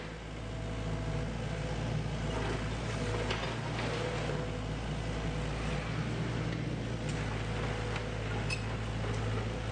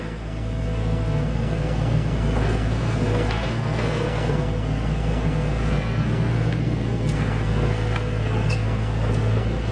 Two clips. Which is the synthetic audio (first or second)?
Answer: second